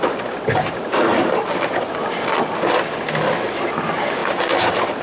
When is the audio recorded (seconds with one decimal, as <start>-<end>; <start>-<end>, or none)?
0.0-5.0